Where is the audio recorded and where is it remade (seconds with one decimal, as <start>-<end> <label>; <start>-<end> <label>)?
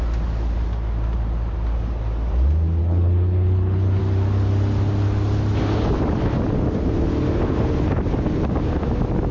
0.0-2.8 recorded; 2.8-4.0 remade; 4.0-9.3 recorded